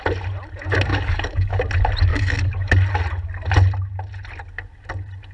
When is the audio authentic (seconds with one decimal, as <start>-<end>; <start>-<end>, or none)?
0.0-0.9; 1.6-2.1; 2.7-5.3